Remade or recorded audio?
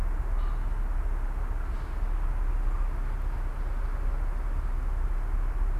recorded